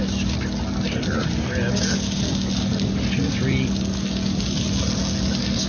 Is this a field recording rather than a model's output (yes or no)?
yes